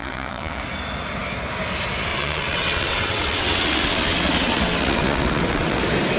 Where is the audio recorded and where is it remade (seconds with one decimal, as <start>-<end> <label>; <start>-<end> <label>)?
0.0-0.6 remade; 0.6-2.1 recorded; 2.1-5.8 remade; 5.8-6.2 recorded